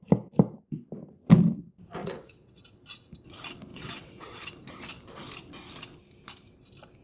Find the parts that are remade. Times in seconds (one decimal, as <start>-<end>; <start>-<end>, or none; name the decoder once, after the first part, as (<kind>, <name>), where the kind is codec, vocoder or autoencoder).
2.0-2.6 (vocoder, WaveNeXt); 3.7-4.5